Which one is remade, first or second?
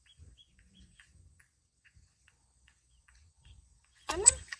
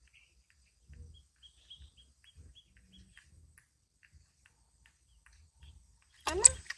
first